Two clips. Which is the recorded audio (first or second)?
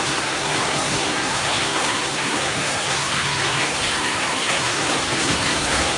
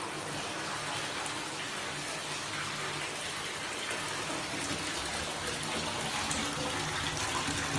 second